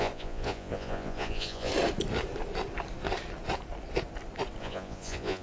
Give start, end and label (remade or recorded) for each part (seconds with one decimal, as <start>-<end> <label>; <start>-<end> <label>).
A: 0.0-1.7 remade; 1.7-4.6 recorded; 4.6-5.4 remade